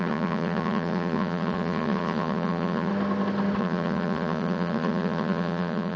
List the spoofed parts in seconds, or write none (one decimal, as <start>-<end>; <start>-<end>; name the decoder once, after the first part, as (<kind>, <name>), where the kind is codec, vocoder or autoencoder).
0.0-2.9 (vocoder, Vocos); 3.6-6.0